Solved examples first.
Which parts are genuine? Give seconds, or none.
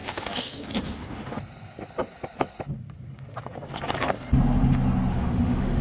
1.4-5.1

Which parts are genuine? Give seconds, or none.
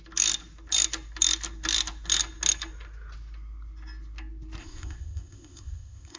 0.0-4.6